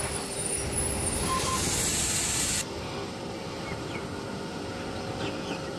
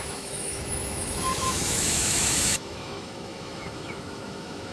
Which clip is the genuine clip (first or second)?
first